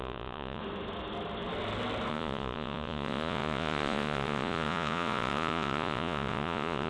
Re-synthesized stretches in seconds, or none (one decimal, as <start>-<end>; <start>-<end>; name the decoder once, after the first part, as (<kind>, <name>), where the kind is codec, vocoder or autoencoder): 0.0-0.6 (vocoder, Vocos); 2.1-6.9

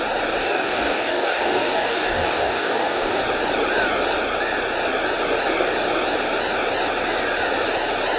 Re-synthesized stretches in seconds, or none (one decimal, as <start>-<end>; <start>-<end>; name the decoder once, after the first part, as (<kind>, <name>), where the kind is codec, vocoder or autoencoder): 0.4-3.2 (codec, DAC)